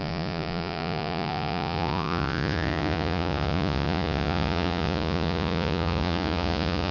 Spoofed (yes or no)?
yes